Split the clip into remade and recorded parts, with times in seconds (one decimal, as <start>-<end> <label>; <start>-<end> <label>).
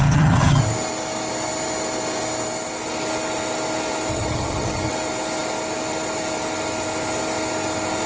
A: 0.0-0.6 remade; 0.6-4.1 recorded; 4.1-4.9 remade; 4.9-8.1 recorded